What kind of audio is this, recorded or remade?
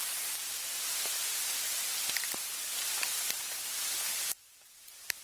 remade